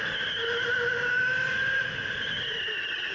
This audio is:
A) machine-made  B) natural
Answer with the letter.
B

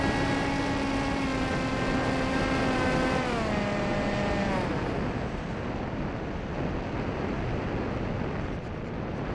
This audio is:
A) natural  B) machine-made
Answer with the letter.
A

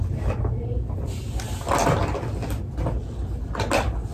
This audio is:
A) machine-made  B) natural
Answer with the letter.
B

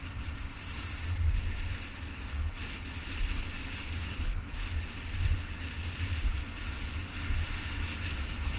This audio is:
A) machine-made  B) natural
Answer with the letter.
B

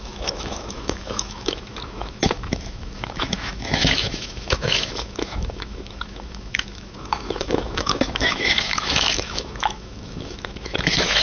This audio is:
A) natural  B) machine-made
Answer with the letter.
B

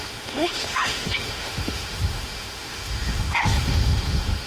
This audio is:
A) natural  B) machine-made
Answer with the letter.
B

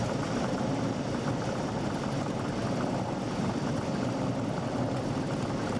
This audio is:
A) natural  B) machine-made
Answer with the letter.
A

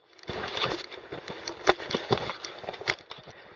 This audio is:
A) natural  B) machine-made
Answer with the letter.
A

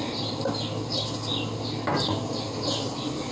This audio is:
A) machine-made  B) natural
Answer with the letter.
B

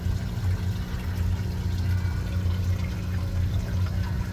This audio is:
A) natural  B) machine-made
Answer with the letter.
A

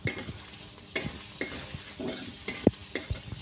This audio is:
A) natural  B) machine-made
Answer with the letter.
A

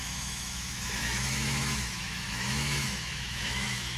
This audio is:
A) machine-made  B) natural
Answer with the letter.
A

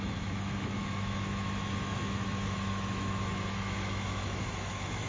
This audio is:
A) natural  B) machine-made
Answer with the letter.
B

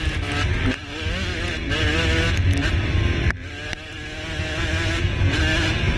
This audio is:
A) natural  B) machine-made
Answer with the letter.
A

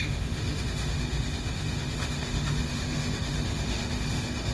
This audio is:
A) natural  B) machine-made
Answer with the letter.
B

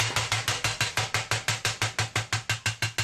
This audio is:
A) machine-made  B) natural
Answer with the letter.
B